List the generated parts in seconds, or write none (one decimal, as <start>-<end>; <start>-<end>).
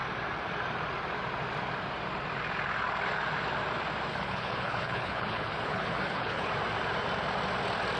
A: 4.1-6.5